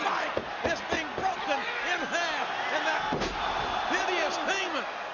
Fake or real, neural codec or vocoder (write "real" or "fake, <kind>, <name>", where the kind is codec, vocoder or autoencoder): real